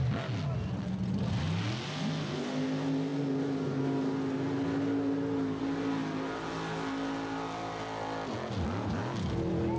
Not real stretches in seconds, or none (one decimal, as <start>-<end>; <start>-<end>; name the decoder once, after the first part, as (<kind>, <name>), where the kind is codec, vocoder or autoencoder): none